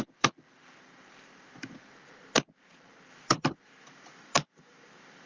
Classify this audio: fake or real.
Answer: fake